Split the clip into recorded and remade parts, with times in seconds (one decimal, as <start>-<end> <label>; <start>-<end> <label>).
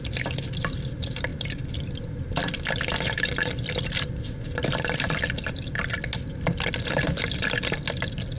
0.0-8.4 recorded